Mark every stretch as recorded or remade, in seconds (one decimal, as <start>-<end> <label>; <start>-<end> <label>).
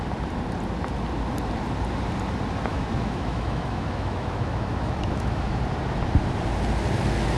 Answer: 0.0-2.7 recorded; 2.7-5.6 remade; 5.6-7.4 recorded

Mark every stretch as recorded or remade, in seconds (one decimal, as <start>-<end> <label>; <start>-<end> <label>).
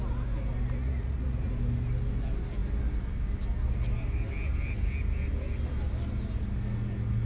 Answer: 0.0-0.8 recorded; 0.8-1.5 remade; 1.5-7.3 recorded